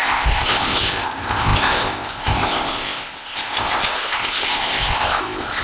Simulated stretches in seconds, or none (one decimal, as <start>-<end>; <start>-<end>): 0.0-5.6